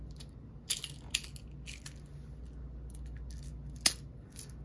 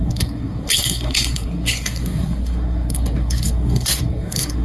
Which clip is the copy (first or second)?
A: second